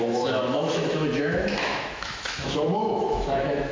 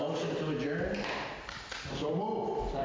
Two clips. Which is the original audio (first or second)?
second